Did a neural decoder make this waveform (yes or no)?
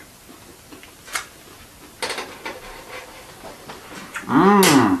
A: no